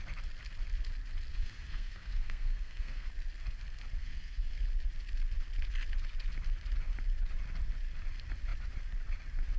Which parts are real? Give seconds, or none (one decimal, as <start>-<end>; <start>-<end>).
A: 0.0-1.3; 3.1-4.0; 4.6-9.6